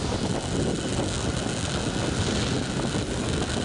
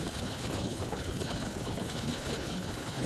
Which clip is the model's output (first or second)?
second